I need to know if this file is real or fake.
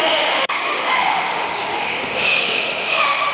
fake